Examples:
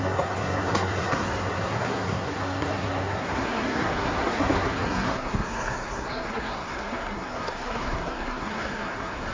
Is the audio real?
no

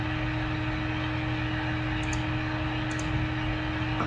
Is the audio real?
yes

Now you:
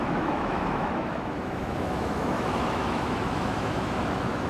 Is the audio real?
no